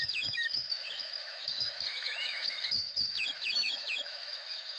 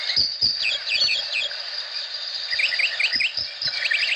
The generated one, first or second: first